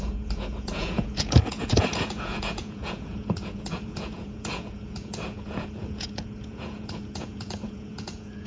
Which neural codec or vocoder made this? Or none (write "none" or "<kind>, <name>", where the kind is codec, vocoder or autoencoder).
vocoder, Vocos